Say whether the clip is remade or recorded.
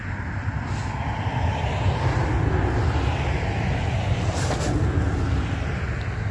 recorded